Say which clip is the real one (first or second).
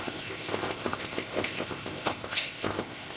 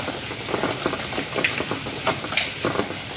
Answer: second